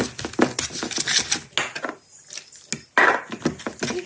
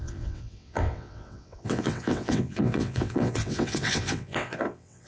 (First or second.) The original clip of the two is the first